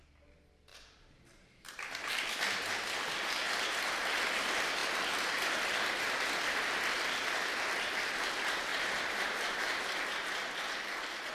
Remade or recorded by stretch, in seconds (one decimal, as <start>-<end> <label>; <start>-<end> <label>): 0.0-0.7 recorded; 0.7-2.7 remade; 2.7-8.7 recorded; 8.7-9.8 remade; 9.8-11.3 recorded